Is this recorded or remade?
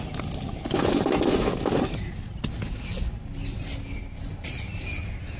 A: recorded